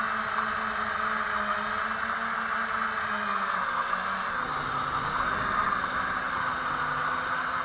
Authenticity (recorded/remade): recorded